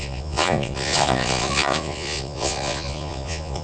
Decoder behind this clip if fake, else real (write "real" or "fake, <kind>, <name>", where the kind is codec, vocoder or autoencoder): fake, vocoder, Vocos